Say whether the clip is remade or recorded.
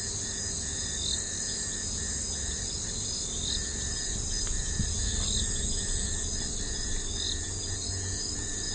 recorded